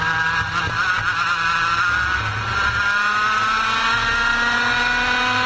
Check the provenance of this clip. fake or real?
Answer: real